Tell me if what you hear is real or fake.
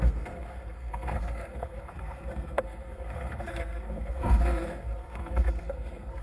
fake